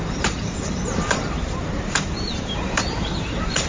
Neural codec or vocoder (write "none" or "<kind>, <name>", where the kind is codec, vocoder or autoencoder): vocoder, BigVGAN v2